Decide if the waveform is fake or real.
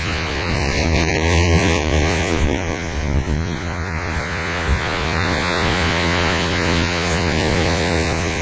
fake